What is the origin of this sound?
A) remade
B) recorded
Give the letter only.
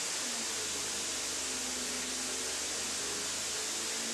B